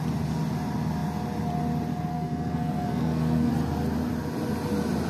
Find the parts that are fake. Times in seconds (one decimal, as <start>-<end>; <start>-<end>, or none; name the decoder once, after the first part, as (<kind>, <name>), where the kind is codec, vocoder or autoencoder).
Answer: 2.1-3.5 (codec, SNAC)